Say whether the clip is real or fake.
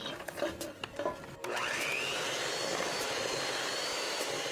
real